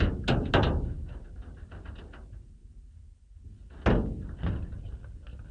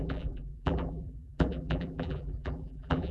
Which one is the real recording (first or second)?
first